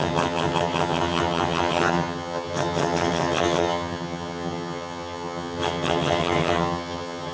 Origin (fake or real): fake